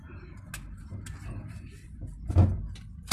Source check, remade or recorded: recorded